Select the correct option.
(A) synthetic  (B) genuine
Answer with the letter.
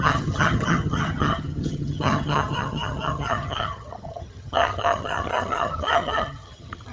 A